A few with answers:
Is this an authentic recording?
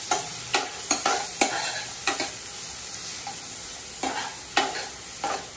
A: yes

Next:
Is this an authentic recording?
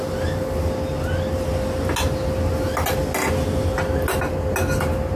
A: yes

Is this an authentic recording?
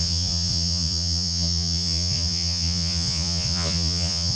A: no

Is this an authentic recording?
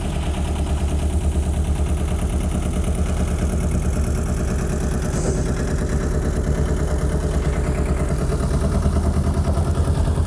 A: yes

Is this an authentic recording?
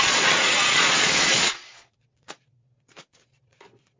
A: no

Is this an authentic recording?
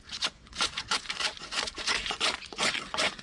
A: no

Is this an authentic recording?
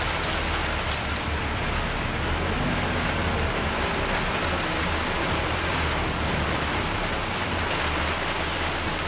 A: yes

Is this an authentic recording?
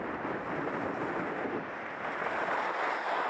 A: yes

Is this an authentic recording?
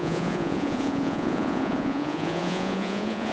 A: no